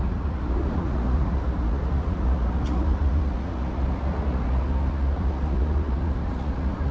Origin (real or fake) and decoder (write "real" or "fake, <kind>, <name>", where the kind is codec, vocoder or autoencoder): fake, vocoder, Vocos